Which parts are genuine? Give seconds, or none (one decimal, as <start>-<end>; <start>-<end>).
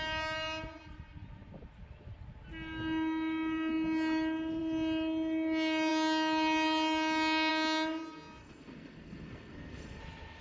0.0-8.4; 10.0-10.4